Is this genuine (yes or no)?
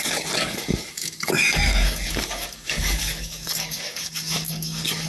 no